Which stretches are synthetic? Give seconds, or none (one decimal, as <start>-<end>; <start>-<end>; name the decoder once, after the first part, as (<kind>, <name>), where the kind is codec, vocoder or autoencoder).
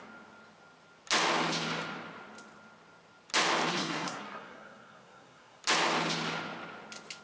3.7-5.6 (codec, SNAC)